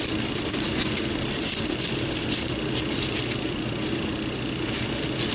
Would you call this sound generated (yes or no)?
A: yes